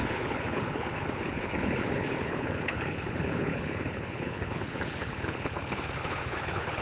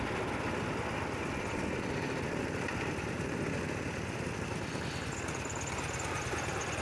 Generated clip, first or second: first